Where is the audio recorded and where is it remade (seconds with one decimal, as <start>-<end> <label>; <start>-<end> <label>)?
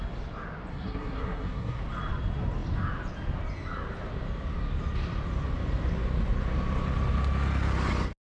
0.0-0.7 recorded; 0.7-1.8 remade; 1.8-8.2 recorded